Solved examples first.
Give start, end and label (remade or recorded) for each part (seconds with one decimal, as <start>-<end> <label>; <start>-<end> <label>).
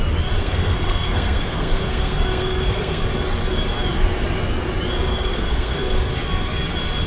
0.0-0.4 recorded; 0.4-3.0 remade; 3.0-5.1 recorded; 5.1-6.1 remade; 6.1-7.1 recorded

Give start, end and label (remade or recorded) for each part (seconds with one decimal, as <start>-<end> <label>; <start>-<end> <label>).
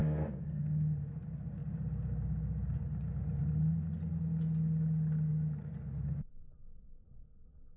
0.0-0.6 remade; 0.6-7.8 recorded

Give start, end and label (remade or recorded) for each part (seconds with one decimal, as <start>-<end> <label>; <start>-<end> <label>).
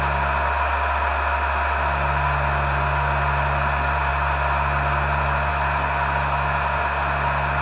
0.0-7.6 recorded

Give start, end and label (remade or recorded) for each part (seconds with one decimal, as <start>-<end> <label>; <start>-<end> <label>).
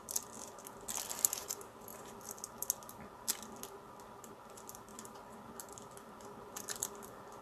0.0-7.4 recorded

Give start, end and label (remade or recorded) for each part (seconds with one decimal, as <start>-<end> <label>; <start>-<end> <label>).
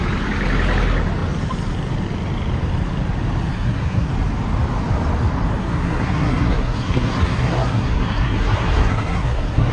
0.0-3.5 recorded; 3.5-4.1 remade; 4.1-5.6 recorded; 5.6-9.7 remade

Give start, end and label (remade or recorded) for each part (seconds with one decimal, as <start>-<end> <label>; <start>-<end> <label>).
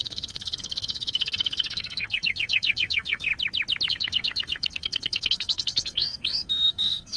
0.0-3.3 remade; 3.3-3.9 recorded; 3.9-7.2 remade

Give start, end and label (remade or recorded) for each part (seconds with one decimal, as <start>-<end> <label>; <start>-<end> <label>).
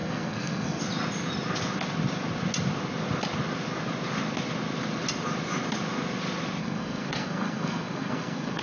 0.0-0.8 remade; 0.8-6.6 recorded; 6.6-8.6 remade